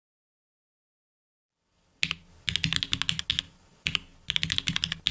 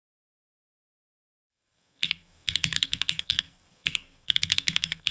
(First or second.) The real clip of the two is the first